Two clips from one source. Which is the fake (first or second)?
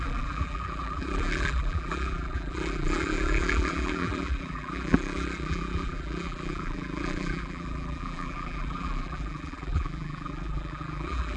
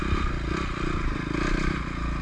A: first